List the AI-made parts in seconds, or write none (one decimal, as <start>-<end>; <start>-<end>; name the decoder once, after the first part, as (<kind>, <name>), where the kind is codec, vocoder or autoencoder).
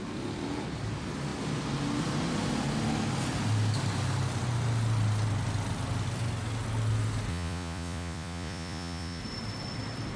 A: 7.3-9.2 (vocoder, Vocos)